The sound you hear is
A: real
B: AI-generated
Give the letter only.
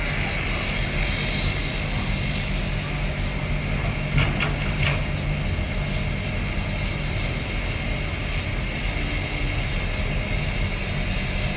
A